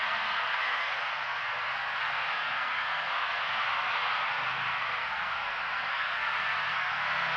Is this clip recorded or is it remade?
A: remade